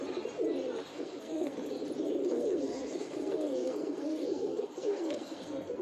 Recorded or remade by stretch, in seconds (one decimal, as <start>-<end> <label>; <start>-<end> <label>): 0.0-0.9 recorded; 0.9-1.7 remade; 1.7-2.2 recorded; 2.2-5.8 remade

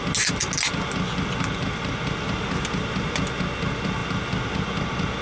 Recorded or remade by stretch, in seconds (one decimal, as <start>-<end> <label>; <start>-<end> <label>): 0.0-5.2 recorded

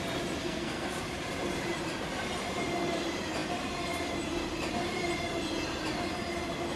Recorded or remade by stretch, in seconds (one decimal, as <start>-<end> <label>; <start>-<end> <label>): 0.0-0.4 recorded; 0.4-0.9 remade; 0.9-6.8 recorded

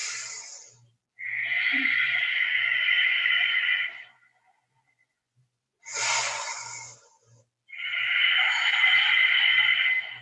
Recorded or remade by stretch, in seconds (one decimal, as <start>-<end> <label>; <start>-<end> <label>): 0.0-1.4 recorded; 1.4-5.8 remade; 5.8-6.2 recorded; 6.2-7.4 remade; 7.4-10.2 recorded

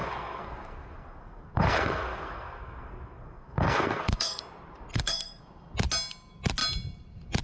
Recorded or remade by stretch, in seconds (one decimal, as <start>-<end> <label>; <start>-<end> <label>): 0.0-4.4 remade; 4.4-4.9 recorded; 4.9-5.4 remade; 5.4-7.4 recorded

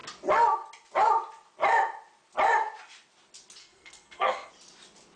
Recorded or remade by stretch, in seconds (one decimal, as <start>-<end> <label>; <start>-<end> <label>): 0.0-3.6 recorded; 3.6-4.5 remade; 4.5-5.2 recorded